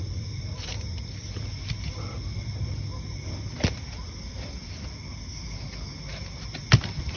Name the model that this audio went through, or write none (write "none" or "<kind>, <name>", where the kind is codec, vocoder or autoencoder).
none